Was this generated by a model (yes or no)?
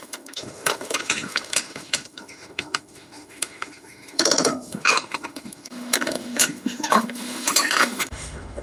yes